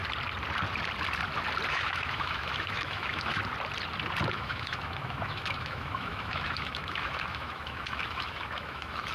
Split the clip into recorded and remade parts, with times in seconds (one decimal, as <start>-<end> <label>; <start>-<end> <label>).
0.0-1.7 recorded; 1.7-3.4 remade; 3.4-4.3 recorded; 4.3-9.1 remade